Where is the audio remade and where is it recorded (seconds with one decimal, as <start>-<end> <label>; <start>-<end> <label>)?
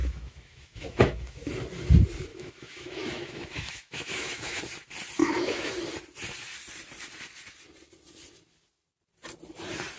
0.0-1.5 remade; 1.5-2.3 recorded; 2.3-4.6 remade; 4.6-5.2 recorded; 5.2-5.7 remade; 5.7-10.0 recorded